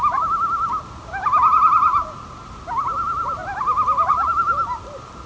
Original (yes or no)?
yes